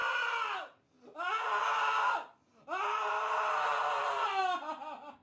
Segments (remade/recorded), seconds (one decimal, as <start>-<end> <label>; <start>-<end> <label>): 0.0-5.2 recorded